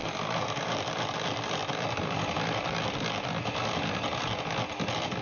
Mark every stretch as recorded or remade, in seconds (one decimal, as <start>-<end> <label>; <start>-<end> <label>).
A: 0.0-1.1 remade; 1.1-5.2 recorded